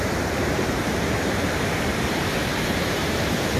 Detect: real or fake fake